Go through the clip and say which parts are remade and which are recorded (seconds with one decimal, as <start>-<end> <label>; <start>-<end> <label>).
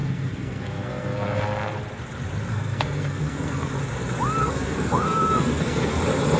0.0-1.8 remade; 1.8-2.5 recorded; 2.5-3.7 remade; 3.7-4.4 recorded; 4.4-6.0 remade; 6.0-6.4 recorded